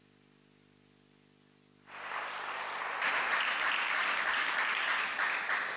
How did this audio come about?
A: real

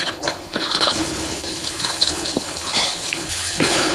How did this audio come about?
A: fake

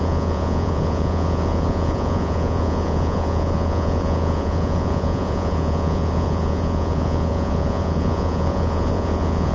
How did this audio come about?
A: fake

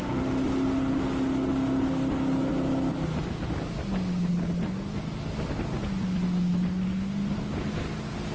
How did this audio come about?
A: real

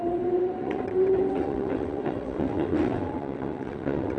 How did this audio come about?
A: fake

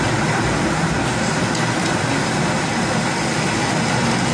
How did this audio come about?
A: real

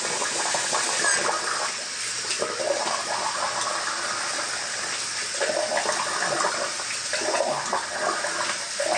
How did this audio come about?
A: real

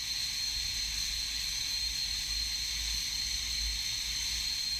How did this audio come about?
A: real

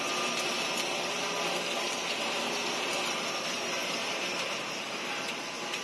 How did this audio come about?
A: real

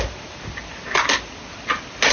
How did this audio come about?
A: real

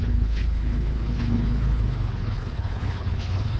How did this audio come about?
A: fake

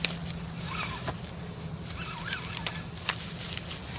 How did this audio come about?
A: real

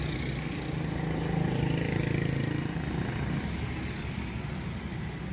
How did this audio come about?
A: real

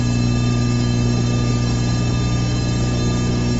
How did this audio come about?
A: fake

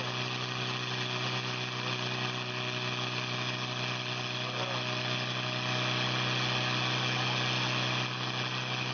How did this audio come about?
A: real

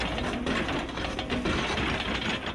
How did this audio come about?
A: real